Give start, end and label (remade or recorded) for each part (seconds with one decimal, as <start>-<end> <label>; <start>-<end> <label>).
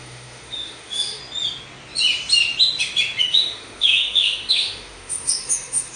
0.0-1.2 remade; 1.2-3.2 recorded; 3.2-6.0 remade